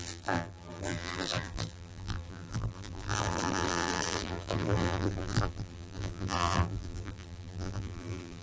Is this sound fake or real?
fake